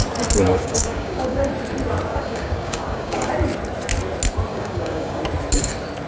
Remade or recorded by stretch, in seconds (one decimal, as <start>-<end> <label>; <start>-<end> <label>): 0.0-0.5 recorded; 0.5-1.5 remade; 1.5-2.1 recorded; 2.1-3.3 remade; 3.3-4.5 recorded; 4.5-5.2 remade; 5.2-6.1 recorded